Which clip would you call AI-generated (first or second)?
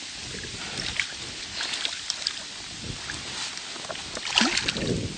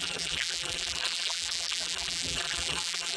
second